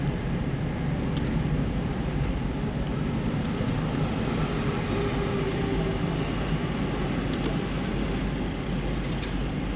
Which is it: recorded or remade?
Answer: recorded